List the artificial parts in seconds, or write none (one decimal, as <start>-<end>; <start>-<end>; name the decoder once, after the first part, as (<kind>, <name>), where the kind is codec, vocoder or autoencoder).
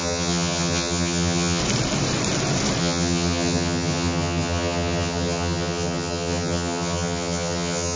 0.0-1.6 (vocoder, HiFi-GAN); 2.8-8.0